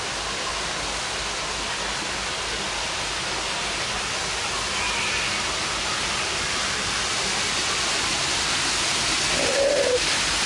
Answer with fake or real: real